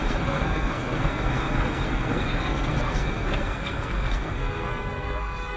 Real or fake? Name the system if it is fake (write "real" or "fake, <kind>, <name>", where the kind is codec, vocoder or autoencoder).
fake, codec, SNAC